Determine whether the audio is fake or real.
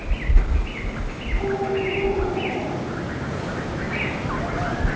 real